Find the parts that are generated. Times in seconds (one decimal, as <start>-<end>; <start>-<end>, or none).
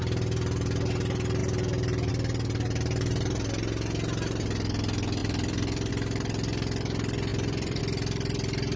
5.2-5.9; 7.3-7.8